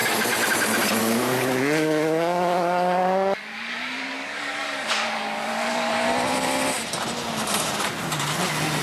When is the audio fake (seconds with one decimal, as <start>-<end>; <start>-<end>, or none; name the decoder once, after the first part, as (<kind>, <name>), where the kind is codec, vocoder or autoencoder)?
1.0-5.9 (codec, DAC)